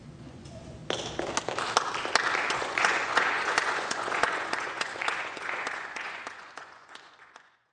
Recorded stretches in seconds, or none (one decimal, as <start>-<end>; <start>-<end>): 0.8-2.5